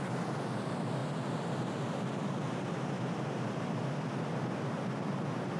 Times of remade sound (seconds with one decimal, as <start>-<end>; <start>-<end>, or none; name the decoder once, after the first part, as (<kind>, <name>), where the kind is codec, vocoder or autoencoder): none